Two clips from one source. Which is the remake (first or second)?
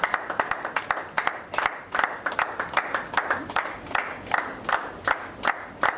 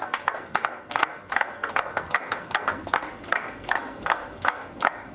second